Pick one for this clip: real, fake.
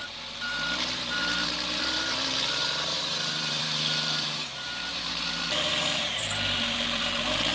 fake